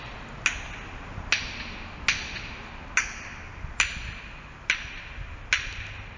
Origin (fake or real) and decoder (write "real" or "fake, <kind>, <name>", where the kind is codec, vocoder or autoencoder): real